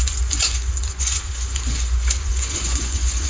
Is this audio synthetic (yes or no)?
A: yes